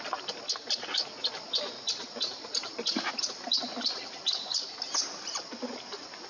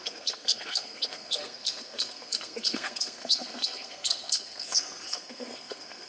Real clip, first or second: first